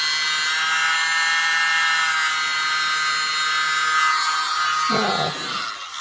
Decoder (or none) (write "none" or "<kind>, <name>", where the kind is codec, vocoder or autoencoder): none